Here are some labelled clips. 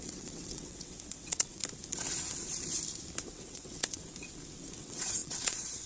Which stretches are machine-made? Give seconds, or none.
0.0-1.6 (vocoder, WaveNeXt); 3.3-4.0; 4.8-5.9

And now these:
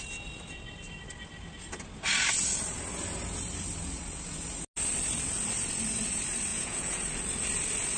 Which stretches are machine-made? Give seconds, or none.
6.5-7.0 (vocoder, Vocos)

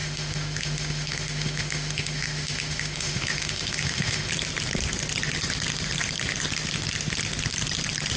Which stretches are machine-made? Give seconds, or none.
0.0-4.3 (autoencoder, DAC-VAE)

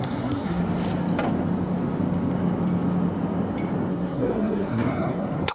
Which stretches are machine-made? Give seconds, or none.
0.0-0.6 (codec, SNAC); 3.9-5.5

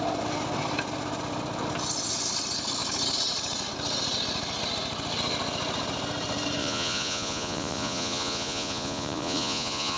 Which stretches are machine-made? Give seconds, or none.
6.6-10.0 (vocoder, Vocos)

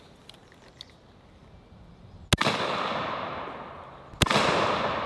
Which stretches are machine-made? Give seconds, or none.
none